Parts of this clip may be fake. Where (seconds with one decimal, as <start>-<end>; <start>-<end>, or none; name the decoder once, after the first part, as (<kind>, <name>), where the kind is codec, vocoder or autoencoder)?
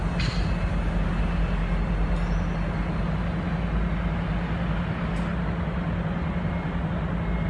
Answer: none